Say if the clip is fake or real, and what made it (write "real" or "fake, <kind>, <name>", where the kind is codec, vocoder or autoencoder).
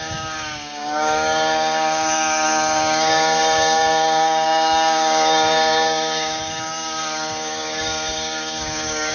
fake, codec, DAC